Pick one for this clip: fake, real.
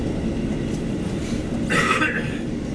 real